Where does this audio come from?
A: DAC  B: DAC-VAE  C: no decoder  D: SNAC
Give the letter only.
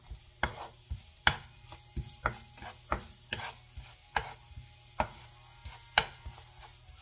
C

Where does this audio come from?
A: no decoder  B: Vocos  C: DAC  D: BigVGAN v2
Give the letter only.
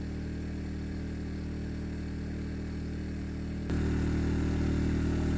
A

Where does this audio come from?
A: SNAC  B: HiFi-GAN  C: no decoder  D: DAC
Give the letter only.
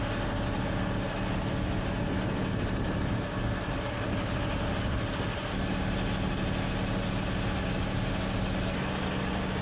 C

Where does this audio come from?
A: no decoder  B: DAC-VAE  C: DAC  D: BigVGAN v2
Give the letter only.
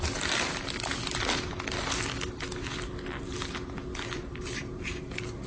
A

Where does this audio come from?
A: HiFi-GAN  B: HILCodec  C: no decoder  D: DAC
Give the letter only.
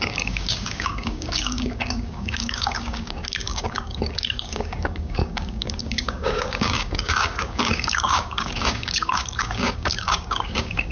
D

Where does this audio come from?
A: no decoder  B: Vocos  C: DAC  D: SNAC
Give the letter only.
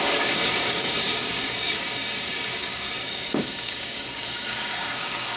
C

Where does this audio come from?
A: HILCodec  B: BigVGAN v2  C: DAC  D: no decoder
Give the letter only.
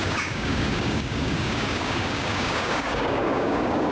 C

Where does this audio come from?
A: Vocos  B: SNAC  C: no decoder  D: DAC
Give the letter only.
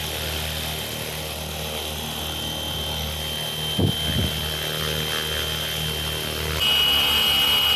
C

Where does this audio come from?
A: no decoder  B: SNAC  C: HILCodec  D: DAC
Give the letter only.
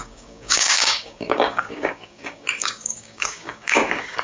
D